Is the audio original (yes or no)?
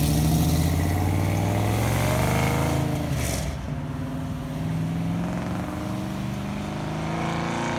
yes